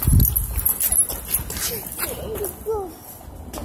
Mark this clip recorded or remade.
recorded